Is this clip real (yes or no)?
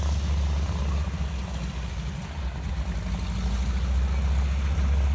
yes